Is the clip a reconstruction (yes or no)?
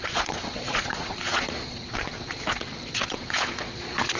yes